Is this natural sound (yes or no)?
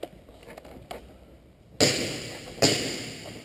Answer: yes